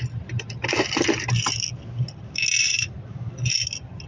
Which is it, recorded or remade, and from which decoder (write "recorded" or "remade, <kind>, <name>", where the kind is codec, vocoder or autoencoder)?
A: recorded